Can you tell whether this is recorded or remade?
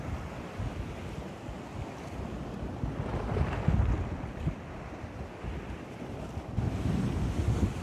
recorded